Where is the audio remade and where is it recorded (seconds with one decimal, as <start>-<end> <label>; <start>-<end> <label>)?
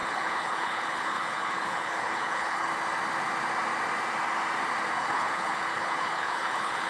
0.0-2.7 remade; 2.7-4.9 recorded; 4.9-6.9 remade